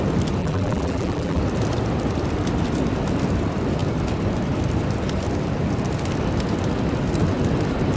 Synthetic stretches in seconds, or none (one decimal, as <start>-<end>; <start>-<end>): 0.4-1.4